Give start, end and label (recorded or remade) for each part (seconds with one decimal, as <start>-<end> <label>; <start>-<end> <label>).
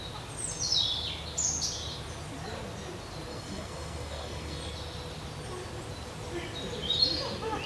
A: 0.0-3.3 recorded; 3.3-4.7 remade; 4.7-7.7 recorded